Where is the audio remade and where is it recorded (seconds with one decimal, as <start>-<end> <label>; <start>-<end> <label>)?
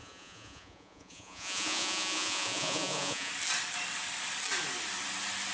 0.0-3.3 remade; 3.3-5.5 recorded